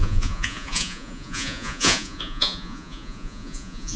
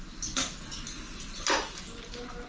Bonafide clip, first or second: second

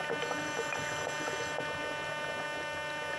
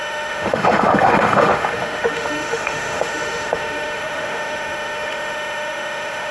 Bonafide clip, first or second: first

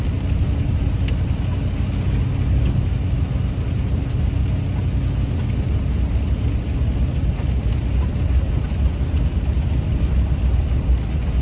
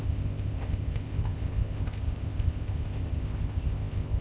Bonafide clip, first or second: first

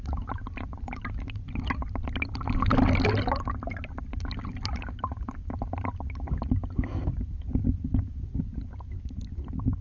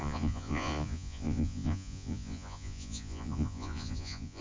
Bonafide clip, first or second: first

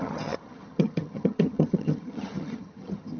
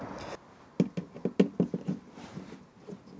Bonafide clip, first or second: second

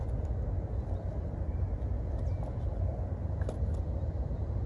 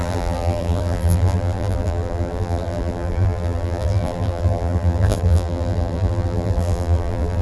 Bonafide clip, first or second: first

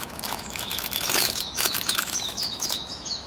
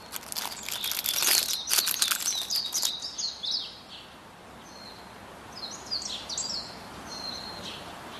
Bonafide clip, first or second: second